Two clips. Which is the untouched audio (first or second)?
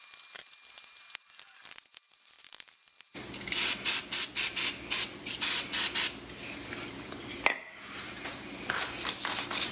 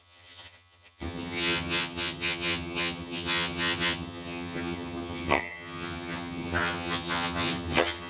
first